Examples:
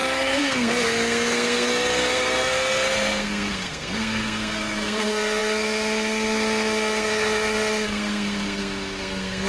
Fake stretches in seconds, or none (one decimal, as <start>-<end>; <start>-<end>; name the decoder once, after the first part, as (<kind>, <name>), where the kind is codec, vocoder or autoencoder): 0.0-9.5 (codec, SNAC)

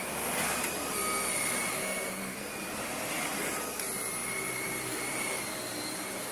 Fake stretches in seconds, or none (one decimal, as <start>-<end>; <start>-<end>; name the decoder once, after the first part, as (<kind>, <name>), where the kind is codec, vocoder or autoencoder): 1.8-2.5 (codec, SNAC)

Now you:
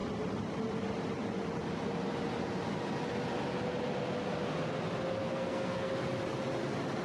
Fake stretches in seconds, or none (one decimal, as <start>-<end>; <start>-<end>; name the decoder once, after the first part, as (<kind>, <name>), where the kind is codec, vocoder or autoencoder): 5.2-5.9 (codec, SNAC)

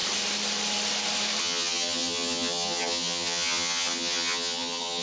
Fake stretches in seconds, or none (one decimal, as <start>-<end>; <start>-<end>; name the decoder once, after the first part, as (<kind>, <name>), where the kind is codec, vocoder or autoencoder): 1.4-5.0 (vocoder, HiFi-GAN)

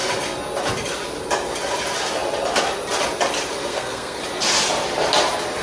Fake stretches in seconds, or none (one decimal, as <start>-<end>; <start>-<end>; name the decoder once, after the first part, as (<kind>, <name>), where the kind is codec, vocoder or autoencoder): 3.7-4.2 (codec, SNAC)